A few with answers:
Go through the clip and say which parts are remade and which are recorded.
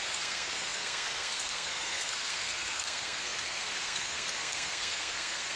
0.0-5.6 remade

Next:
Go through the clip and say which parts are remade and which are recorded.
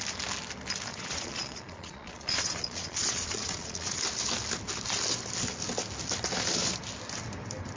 0.0-0.9 recorded; 0.9-4.0 remade; 4.0-7.8 recorded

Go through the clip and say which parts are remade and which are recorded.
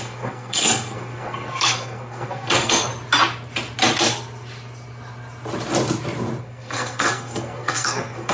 0.0-2.9 remade; 2.9-6.4 recorded; 6.4-8.3 remade